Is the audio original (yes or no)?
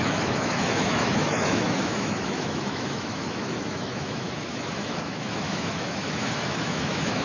no